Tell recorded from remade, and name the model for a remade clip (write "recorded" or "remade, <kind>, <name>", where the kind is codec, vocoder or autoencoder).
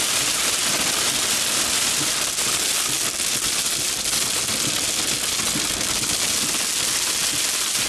recorded